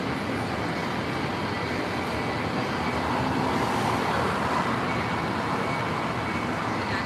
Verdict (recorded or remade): recorded